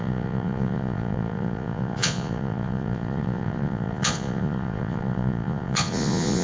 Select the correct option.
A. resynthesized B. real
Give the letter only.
A